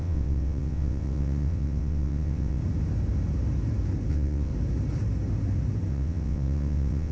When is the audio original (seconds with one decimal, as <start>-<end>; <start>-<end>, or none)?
2.6-4.1; 4.5-5.9

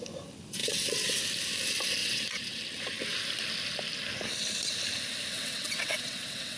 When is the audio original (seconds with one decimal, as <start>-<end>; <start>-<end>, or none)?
0.0-0.6; 1.2-2.0; 2.6-5.3

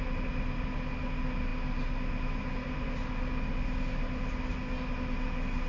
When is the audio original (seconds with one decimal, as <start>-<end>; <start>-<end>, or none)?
0.0-5.7

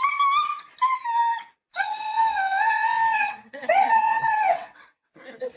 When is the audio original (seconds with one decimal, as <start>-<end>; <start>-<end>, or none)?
0.0-1.7; 5.1-5.6

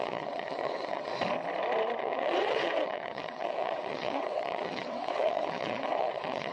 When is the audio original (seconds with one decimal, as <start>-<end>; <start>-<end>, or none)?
1.1-2.0

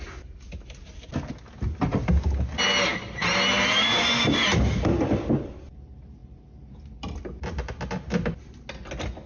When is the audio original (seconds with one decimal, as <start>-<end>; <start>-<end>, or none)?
0.0-9.3

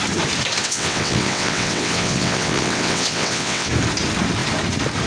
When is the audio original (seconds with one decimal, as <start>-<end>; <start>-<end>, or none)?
0.0-0.6; 3.7-5.1

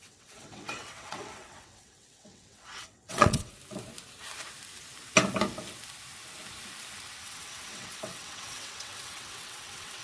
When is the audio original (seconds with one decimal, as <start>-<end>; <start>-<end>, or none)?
3.5-7.2